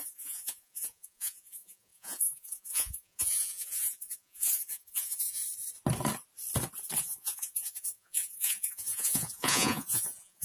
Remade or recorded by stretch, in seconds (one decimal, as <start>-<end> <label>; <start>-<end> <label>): 0.0-5.4 remade; 5.4-7.0 recorded; 7.0-10.4 remade